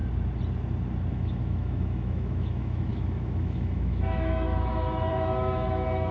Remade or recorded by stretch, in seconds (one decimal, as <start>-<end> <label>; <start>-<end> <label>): 0.0-1.1 recorded; 1.1-6.1 remade